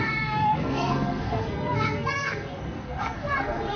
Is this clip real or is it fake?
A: fake